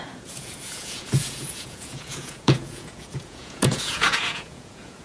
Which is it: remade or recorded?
remade